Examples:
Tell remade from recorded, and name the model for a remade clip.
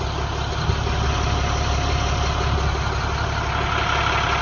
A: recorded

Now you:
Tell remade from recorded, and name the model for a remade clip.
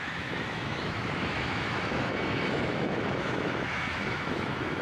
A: remade, autoencoder, DAC-VAE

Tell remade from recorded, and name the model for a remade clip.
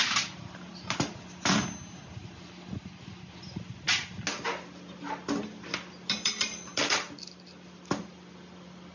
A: recorded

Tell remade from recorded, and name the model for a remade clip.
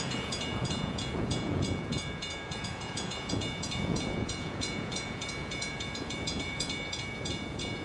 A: remade, vocoder, Vocos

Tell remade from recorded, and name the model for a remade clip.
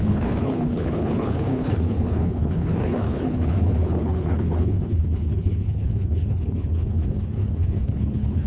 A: remade, codec, HILCodec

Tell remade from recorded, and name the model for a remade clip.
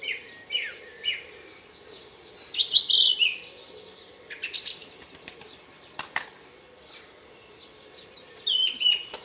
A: recorded